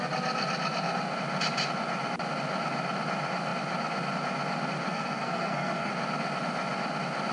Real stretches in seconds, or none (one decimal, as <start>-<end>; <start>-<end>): 0.0-4.9; 5.9-7.3